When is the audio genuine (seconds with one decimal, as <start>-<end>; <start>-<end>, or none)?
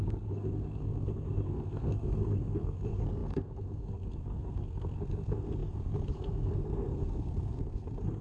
none